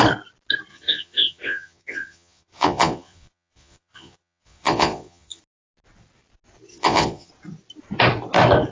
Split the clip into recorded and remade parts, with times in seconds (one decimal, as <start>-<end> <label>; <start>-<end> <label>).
0.0-0.7 recorded; 0.7-5.4 remade; 5.4-6.7 recorded; 6.7-7.3 remade; 7.3-8.7 recorded